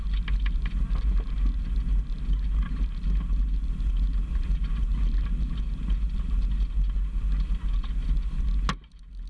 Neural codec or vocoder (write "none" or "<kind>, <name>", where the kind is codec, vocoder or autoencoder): none